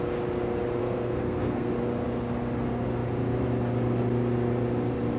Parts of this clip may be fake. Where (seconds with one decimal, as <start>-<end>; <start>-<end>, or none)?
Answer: 0.8-1.7